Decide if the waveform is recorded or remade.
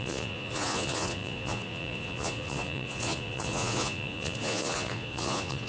remade